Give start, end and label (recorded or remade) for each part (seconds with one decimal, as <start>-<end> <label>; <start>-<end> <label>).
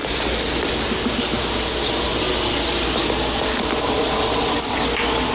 0.0-5.3 recorded